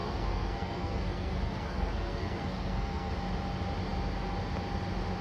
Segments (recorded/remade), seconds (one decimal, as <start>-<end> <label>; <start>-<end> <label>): 0.0-3.1 remade; 3.1-5.2 recorded